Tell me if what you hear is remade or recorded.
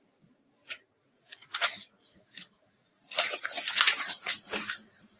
remade